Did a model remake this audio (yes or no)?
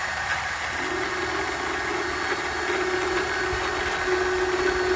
no